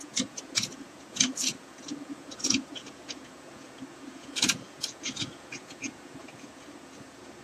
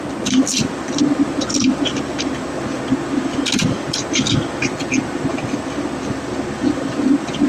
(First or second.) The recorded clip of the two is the second